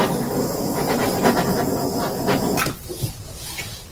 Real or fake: real